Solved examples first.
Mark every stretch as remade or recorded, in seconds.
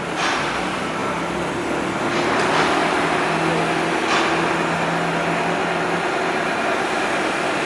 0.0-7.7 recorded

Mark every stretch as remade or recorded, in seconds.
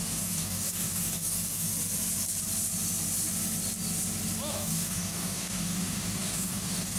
0.0-1.7 remade; 1.7-4.5 recorded; 4.5-7.0 remade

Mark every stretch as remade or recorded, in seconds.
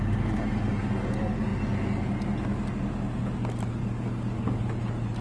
0.0-3.8 recorded; 3.8-4.6 remade; 4.6-5.2 recorded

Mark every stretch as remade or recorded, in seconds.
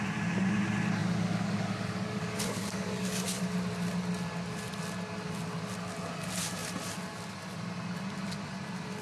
0.0-1.0 recorded; 1.0-3.4 remade; 3.4-9.0 recorded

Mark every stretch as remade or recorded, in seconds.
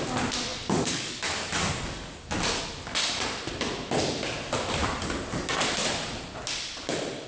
0.0-0.5 recorded; 0.5-2.6 remade; 2.6-7.3 recorded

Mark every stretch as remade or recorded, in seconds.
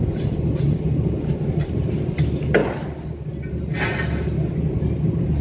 0.0-5.4 recorded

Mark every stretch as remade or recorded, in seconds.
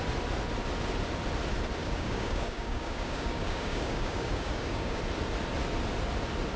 0.0-1.8 recorded; 1.8-5.0 remade; 5.0-6.6 recorded